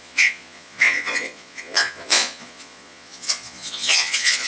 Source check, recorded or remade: remade